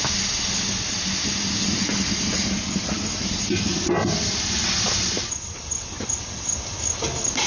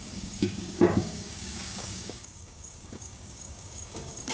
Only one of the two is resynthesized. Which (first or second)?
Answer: second